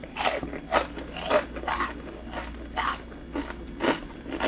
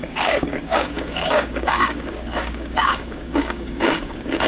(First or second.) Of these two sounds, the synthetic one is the second